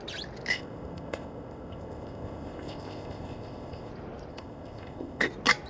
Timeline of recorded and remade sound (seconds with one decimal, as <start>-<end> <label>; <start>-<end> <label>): 0.0-0.5 recorded; 0.5-3.9 remade; 3.9-4.3 recorded; 4.3-5.3 remade; 5.3-5.7 recorded